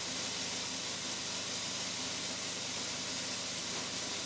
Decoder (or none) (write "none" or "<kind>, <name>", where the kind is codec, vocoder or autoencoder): none